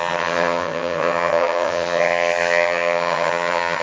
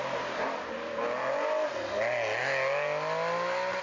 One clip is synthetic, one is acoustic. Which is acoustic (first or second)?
second